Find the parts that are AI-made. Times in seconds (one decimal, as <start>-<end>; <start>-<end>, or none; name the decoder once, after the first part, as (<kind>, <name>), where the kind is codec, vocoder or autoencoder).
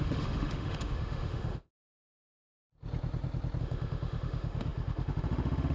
0.0-1.8 (autoencoder, DAC-VAE); 3.6-5.7